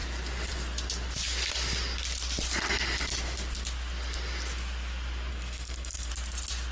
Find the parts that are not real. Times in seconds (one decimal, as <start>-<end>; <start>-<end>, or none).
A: 5.3-6.1